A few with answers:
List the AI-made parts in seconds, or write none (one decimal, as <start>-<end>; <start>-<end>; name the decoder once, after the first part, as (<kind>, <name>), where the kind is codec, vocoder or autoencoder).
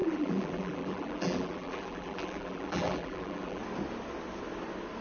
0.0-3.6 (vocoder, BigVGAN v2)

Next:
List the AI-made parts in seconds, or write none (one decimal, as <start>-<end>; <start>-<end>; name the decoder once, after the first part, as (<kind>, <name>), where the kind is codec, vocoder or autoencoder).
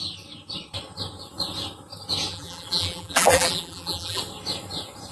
2.3-4.2 (vocoder, BigVGAN v2)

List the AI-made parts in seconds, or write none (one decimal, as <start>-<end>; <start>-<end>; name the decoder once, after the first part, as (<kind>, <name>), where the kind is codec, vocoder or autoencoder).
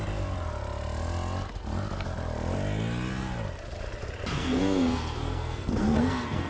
4.3-6.5 (codec, SNAC)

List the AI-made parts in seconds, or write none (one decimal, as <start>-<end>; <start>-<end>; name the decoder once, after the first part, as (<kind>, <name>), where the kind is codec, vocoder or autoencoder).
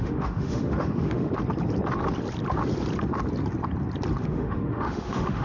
0.0-1.3 (autoencoder, DAC-VAE); 4.2-5.4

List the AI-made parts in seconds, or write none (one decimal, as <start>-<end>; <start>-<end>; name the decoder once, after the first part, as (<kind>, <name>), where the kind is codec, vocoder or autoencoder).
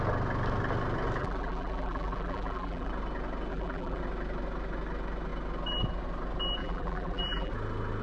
1.2-2.9 (vocoder, BigVGAN v2); 3.5-4.0; 6.6-7.5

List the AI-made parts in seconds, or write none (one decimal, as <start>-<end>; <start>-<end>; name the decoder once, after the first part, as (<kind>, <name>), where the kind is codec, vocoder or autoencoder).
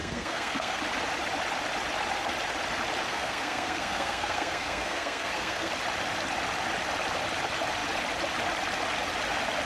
0.0-0.8 (codec, SNAC); 3.1-5.7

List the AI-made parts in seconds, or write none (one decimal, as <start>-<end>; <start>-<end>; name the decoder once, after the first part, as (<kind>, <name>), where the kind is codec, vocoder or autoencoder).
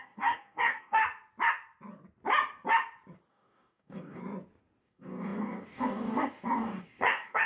0.0-1.0 (codec, DAC); 3.3-4.2; 4.8-7.5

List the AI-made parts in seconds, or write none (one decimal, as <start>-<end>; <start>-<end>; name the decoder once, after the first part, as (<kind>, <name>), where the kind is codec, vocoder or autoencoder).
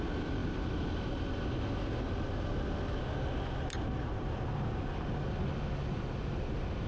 none